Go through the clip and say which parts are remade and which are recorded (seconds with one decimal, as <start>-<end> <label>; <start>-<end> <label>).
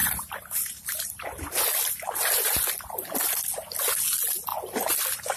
0.0-3.2 remade; 3.2-5.4 recorded